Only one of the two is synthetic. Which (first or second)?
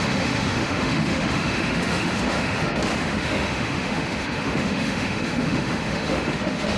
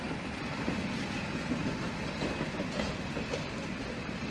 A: first